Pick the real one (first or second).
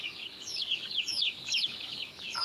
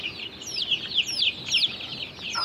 second